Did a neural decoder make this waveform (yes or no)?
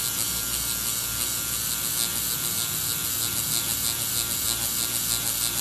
no